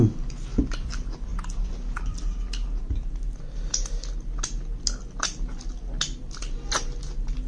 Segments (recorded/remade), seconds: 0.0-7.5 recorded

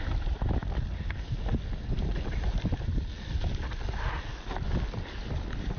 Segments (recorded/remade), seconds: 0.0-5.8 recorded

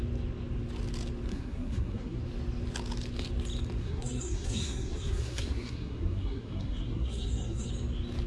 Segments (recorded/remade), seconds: 0.0-1.3 recorded; 1.3-2.2 remade; 2.2-3.8 recorded; 3.8-7.7 remade; 7.7-8.3 recorded